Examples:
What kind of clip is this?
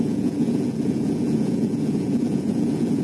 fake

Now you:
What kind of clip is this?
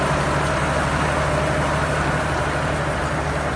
real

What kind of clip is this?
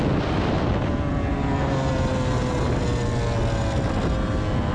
real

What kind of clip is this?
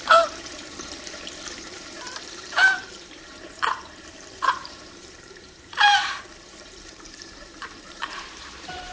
fake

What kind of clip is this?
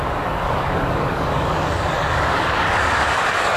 fake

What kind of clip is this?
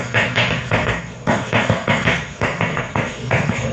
fake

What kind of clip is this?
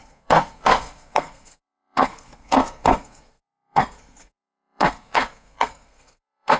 fake